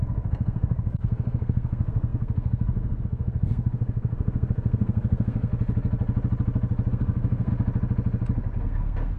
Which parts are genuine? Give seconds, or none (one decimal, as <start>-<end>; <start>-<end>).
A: 5.5-6.9; 7.5-8.6